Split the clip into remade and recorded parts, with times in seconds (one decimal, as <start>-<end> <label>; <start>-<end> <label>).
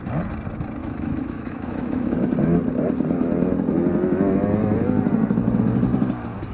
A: 0.0-0.8 recorded; 0.8-2.3 remade; 2.3-6.5 recorded